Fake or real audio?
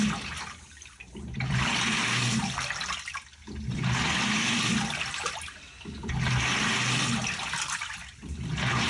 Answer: real